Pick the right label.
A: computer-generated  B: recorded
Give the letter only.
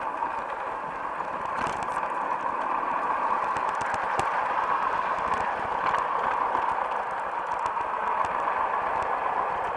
B